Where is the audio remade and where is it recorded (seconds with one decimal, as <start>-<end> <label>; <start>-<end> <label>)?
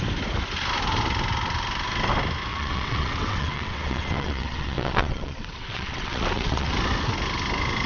0.0-2.5 recorded; 2.5-6.7 remade; 6.7-7.9 recorded